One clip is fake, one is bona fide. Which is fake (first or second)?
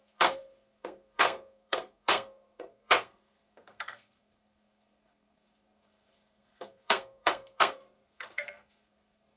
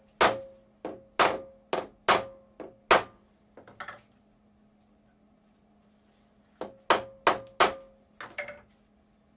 first